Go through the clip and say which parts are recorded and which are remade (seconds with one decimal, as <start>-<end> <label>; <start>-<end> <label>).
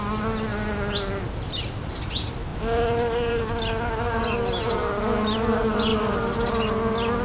0.0-7.2 recorded